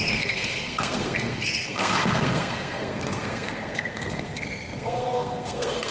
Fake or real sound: fake